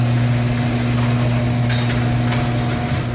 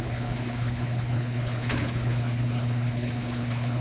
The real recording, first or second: first